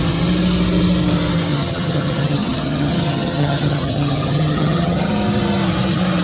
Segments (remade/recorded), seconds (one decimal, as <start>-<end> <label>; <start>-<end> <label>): 0.0-1.5 recorded; 1.5-5.1 remade; 5.1-6.2 recorded